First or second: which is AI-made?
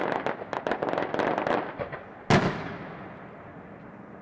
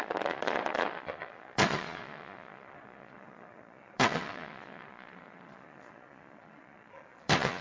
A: second